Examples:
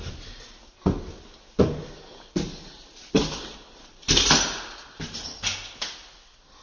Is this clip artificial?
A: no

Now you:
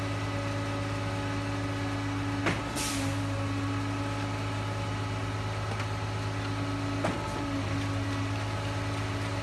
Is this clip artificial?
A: no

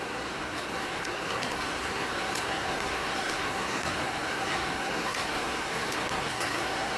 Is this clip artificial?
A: yes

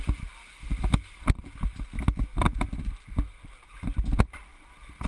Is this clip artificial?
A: no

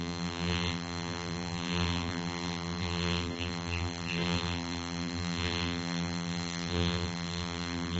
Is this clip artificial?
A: yes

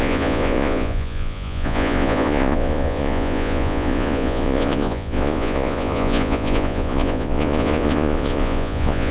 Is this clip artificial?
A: yes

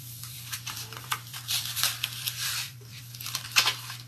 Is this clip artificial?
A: yes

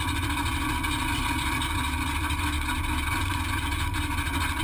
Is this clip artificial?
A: no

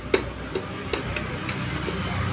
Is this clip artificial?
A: no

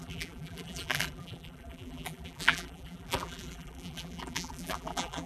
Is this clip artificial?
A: yes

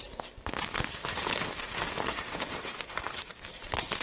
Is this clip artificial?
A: no